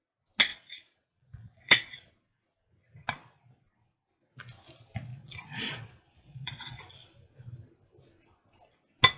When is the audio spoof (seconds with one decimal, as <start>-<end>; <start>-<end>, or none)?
0.5-2.1; 5.1-6.8